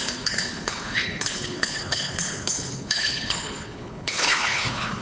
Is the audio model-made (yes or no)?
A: yes